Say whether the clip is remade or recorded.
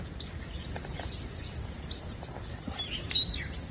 recorded